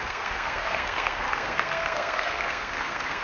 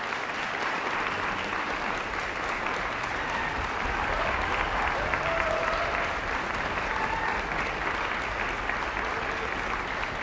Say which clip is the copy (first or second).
first